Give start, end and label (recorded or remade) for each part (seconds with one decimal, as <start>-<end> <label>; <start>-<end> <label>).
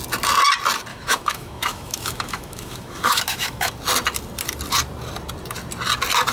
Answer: 0.0-0.9 recorded; 0.9-3.7 remade; 3.7-6.3 recorded